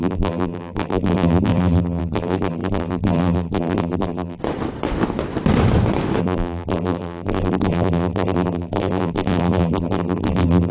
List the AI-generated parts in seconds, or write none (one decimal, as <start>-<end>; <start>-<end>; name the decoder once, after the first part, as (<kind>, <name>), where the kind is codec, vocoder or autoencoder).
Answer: 0.0-4.4 (vocoder, BigVGAN v2); 6.2-10.7